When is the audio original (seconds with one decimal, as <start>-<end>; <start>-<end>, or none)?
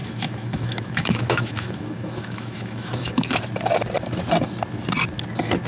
3.4-5.7